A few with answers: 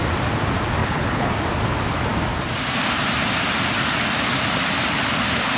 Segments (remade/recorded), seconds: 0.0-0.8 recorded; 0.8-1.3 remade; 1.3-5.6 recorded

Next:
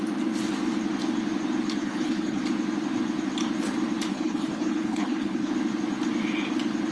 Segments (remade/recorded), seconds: 0.0-1.8 recorded; 1.8-2.4 remade; 2.4-4.1 recorded; 4.1-5.5 remade; 5.5-6.9 recorded